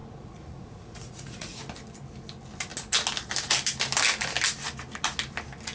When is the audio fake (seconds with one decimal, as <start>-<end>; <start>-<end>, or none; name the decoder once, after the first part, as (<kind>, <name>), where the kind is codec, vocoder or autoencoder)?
0.0-1.6 (vocoder, Vocos)